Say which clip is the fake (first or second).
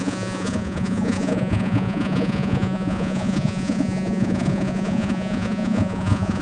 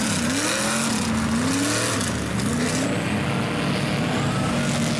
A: first